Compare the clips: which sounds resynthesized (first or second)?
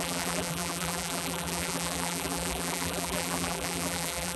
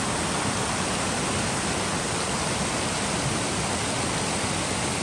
first